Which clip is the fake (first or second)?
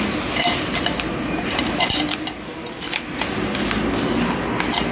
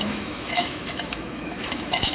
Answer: second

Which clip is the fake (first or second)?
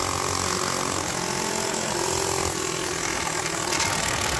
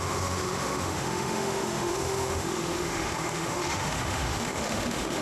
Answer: second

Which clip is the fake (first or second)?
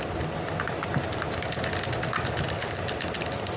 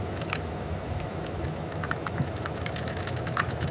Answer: second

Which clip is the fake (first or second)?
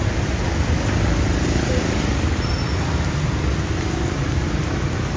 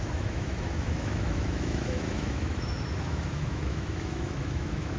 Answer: second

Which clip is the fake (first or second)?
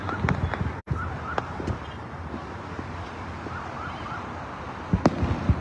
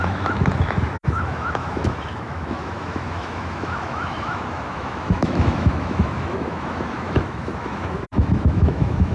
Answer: second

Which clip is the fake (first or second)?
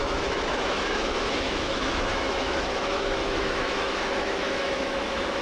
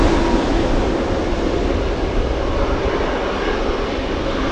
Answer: first